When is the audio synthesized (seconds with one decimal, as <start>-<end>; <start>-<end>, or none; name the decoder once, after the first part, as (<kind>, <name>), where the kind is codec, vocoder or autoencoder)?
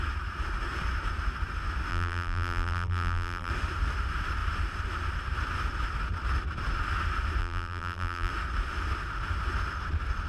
1.9-3.5 (vocoder, BigVGAN v2); 7.4-8.3